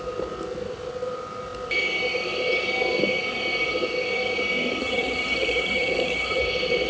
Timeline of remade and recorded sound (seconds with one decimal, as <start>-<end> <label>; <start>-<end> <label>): 0.0-4.8 recorded; 4.8-6.4 remade; 6.4-6.9 recorded